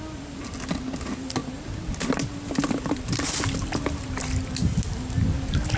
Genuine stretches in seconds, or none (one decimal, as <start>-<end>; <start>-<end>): 0.0-5.8

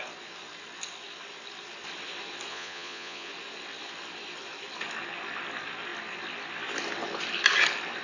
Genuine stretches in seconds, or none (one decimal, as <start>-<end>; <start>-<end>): 0.0-2.5; 3.3-8.0